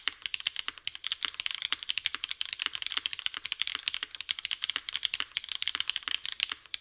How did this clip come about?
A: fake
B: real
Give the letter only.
B